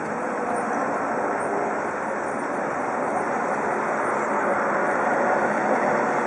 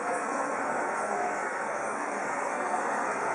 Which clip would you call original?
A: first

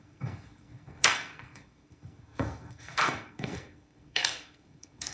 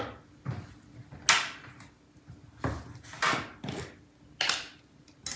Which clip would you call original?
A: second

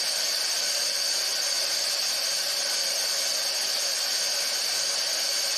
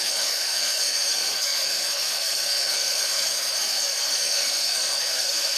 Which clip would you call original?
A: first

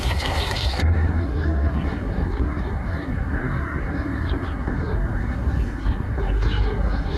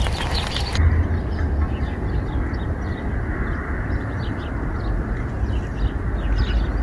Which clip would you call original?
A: second